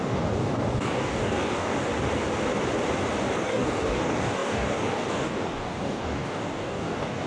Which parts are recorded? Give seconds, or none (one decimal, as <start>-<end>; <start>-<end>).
1.9-3.2